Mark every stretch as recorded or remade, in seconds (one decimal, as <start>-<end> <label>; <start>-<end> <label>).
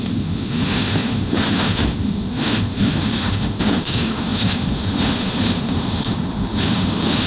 0.0-7.3 remade